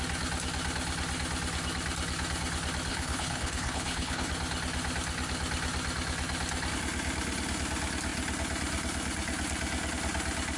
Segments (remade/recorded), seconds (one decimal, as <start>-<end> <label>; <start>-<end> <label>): 0.0-2.9 recorded; 2.9-4.3 remade; 4.3-10.6 recorded